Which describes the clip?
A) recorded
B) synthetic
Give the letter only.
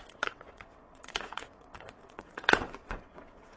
B